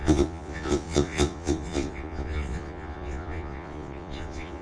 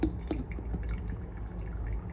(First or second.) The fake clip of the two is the first